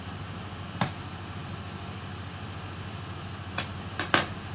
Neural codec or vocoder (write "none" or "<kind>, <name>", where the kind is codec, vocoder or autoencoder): none